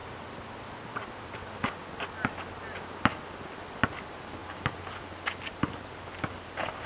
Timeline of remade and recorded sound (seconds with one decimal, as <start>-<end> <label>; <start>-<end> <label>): 0.0-6.9 recorded